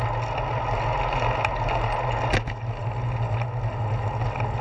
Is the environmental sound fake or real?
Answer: real